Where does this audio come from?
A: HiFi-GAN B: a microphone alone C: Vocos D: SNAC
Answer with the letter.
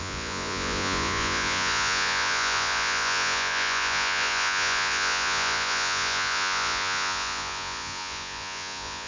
C